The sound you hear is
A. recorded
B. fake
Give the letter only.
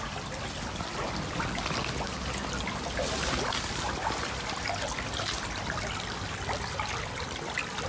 A